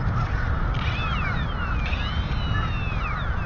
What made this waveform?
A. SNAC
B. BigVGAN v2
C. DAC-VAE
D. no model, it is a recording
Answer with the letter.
D